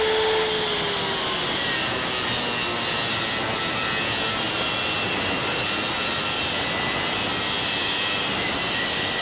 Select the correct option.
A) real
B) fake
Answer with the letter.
A